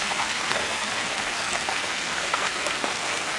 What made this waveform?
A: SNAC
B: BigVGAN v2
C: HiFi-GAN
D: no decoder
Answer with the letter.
A